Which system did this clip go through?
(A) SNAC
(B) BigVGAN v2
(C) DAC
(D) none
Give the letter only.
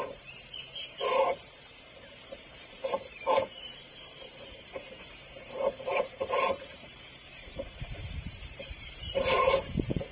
B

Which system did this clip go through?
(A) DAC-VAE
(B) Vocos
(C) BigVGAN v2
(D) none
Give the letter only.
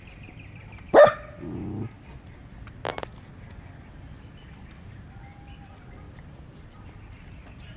D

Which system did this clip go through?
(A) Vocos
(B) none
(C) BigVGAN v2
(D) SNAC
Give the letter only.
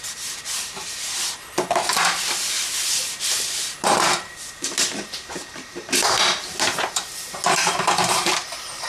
C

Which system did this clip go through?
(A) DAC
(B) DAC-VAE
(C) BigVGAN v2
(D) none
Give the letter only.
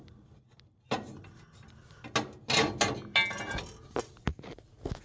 D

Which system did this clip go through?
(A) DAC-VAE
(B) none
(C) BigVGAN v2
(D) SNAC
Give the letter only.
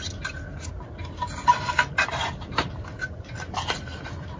B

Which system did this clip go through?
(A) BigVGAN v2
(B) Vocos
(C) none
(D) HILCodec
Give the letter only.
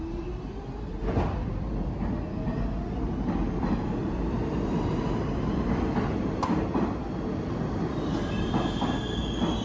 C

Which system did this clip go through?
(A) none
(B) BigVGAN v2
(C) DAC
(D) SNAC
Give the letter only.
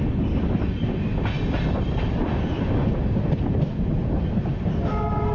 A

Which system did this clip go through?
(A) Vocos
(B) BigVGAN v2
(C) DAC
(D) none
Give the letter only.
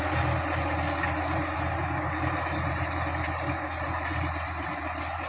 D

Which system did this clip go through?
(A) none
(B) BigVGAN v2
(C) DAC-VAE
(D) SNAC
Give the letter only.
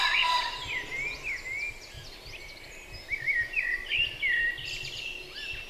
A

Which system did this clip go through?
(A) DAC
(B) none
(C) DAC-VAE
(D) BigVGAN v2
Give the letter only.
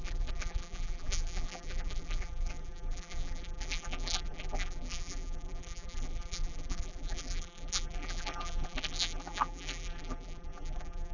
D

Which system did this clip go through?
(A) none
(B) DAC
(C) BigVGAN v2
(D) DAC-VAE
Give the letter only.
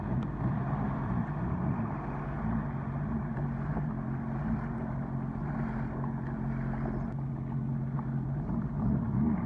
A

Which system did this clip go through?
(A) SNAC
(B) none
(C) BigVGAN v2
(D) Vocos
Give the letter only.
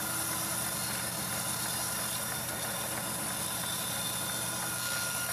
B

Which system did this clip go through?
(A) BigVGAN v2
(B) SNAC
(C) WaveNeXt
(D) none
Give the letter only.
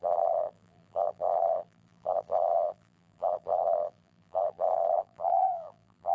A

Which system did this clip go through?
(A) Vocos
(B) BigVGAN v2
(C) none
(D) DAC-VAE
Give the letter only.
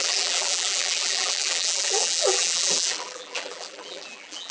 B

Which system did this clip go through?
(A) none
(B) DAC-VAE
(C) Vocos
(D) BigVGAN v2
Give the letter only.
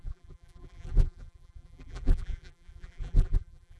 D